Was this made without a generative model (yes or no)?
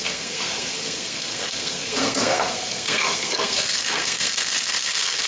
no